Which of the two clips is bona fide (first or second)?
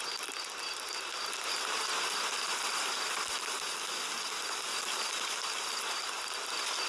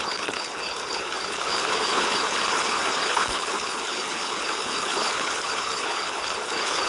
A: first